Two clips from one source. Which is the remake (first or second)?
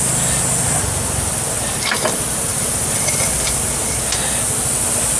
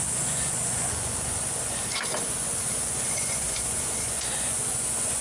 second